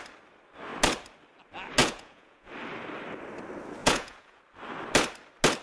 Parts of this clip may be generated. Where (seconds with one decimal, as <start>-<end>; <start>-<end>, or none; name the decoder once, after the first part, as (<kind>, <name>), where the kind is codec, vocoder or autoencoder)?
1.8-2.5 (vocoder, Vocos); 3.8-4.4